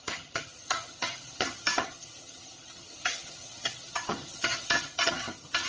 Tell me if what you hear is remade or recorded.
remade